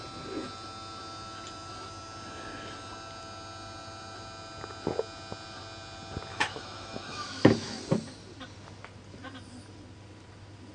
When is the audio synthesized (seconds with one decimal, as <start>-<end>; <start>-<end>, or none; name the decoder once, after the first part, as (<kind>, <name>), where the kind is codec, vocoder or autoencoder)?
6.3-7.8 (autoencoder, DAC-VAE)